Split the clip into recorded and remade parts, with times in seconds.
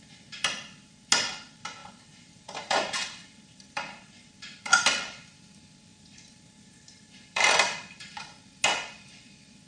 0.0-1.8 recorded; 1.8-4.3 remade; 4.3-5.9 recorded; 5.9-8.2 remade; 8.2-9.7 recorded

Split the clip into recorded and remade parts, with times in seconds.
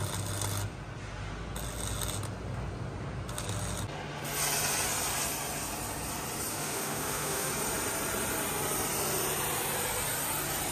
0.0-6.5 recorded; 6.5-7.5 remade; 7.5-10.7 recorded